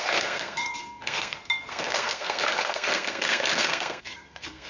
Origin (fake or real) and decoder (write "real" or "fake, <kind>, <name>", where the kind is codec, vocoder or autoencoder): fake, codec, SNAC